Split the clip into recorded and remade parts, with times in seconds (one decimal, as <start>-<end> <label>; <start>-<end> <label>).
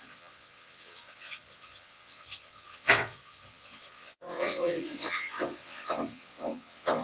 0.0-7.0 remade